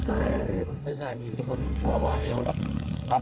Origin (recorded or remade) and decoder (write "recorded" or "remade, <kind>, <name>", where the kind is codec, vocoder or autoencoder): remade, codec, SNAC